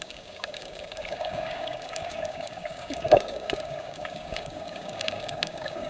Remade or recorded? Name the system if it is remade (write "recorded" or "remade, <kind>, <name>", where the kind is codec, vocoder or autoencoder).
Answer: remade, codec, DAC